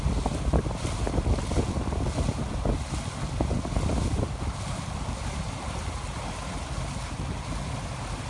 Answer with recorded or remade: recorded